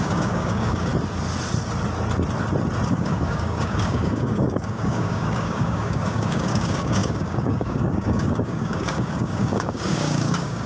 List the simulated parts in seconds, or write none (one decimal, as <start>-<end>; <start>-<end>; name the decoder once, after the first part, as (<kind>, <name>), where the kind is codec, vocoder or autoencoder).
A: 0.0-0.9 (codec, DAC); 2.9-10.7